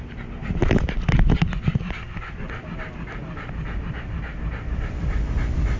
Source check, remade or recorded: recorded